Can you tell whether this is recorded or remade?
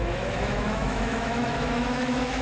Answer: remade